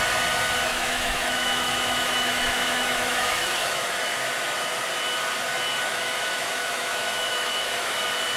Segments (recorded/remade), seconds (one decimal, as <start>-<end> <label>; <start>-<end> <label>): 0.0-0.7 recorded; 0.7-4.0 remade; 4.0-5.9 recorded; 5.9-8.0 remade; 8.0-8.4 recorded